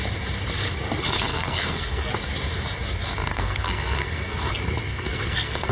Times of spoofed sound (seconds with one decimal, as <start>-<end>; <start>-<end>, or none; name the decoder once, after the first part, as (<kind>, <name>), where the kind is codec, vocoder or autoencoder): 1.3-2.1 (codec, SNAC); 3.3-4.5; 4.9-5.7